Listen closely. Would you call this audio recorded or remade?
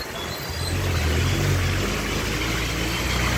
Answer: recorded